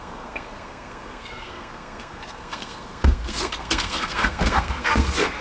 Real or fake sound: fake